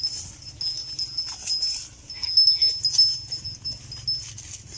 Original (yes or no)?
yes